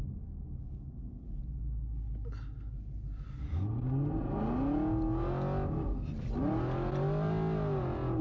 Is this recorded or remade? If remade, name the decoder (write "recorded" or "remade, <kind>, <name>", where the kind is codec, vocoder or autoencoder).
recorded